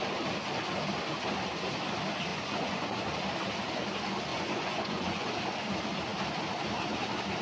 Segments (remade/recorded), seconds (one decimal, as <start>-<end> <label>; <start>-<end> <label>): 0.0-2.3 recorded; 2.3-3.0 remade; 3.0-4.3 recorded; 4.3-5.3 remade; 5.3-7.4 recorded